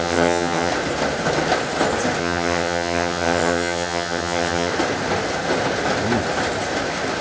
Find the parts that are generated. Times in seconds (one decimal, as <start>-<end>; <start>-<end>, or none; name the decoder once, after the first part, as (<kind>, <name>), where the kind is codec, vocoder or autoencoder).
0.0-0.7 (vocoder, HiFi-GAN); 2.2-4.7